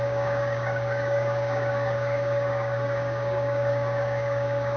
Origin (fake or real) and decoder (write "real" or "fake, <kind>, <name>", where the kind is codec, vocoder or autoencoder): fake, codec, DAC